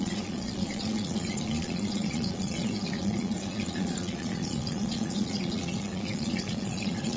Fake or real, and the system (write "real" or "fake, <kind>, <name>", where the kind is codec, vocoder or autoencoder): fake, vocoder, Vocos